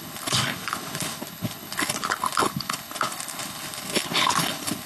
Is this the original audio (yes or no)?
no